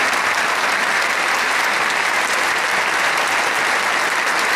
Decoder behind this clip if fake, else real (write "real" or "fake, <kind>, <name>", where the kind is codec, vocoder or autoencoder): real